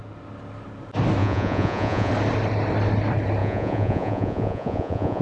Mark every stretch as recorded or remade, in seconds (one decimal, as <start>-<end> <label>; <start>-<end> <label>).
0.0-1.2 recorded; 1.2-2.1 remade; 2.1-3.4 recorded; 3.4-5.2 remade